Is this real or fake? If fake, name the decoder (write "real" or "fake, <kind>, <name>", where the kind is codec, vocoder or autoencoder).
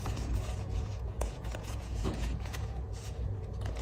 fake, vocoder, Vocos